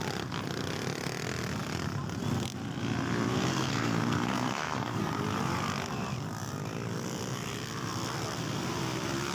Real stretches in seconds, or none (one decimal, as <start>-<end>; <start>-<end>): 0.0-3.5; 5.0-9.3